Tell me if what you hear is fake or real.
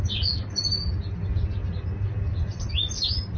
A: real